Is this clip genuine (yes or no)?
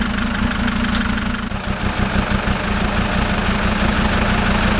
yes